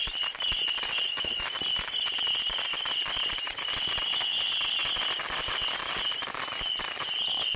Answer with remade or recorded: recorded